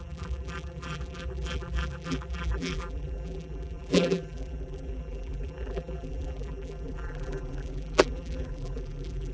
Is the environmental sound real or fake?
fake